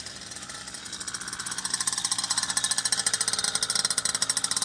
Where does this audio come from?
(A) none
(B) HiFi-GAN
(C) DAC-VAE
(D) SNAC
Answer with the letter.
A